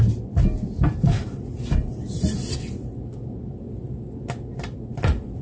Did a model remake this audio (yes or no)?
no